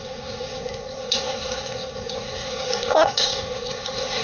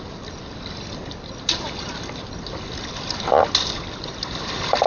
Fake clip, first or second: first